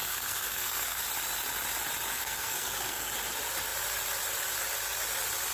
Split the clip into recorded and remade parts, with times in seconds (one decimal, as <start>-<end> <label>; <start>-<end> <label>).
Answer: 0.0-1.0 remade; 1.0-2.1 recorded; 2.1-3.1 remade; 3.1-5.5 recorded